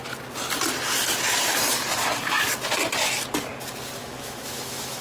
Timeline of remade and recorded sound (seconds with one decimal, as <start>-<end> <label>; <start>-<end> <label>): 0.0-4.0 recorded; 4.0-5.0 remade